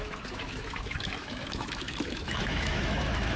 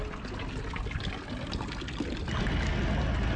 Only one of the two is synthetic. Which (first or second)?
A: first